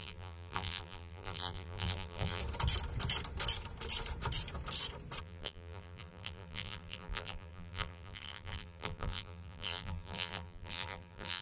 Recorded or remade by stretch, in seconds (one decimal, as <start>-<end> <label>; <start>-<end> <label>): 0.0-2.4 remade; 2.4-5.2 recorded; 5.2-11.4 remade